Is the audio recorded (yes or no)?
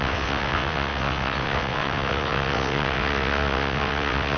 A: no